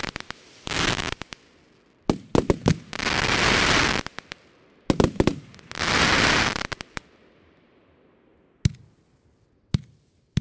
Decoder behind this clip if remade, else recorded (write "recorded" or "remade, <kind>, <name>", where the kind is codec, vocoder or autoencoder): recorded